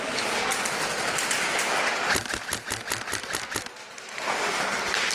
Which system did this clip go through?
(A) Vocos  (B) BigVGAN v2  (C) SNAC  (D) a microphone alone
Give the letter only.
D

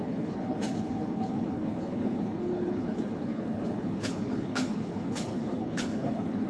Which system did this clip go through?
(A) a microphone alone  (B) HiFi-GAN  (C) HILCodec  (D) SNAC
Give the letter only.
C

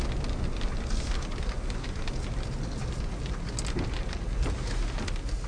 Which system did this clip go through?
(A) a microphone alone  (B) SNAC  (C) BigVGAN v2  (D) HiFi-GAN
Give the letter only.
A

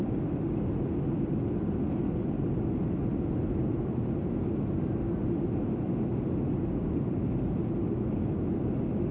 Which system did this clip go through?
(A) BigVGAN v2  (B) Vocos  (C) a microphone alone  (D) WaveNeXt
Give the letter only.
C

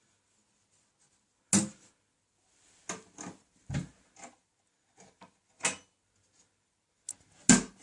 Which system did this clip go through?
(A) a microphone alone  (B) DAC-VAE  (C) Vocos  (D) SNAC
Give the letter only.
A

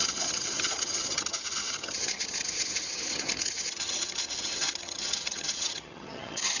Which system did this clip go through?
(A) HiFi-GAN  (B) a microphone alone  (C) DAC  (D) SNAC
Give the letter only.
A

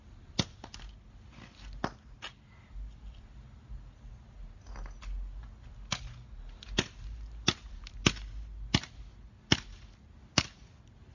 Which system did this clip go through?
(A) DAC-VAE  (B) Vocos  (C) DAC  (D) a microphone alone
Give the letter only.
D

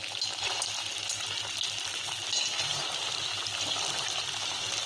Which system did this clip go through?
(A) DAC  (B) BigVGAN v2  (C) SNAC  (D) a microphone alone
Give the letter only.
D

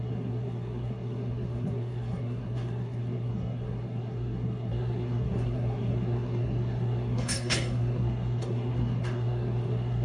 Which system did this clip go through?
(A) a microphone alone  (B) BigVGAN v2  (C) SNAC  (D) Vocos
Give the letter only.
C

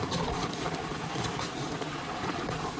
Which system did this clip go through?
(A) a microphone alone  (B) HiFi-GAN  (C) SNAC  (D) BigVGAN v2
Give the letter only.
A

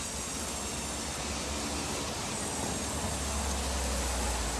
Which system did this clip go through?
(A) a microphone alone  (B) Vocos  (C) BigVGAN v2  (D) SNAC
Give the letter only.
A